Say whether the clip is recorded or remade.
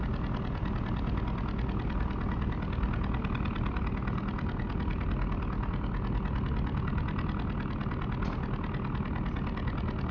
recorded